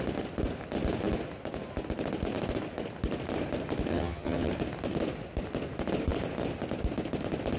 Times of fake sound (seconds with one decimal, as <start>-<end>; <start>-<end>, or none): 3.9-4.5